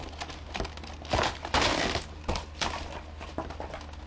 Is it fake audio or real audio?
real